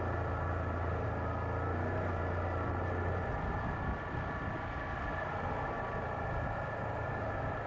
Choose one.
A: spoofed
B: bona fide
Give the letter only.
B